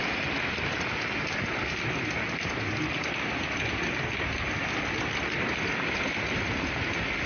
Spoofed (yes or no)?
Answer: no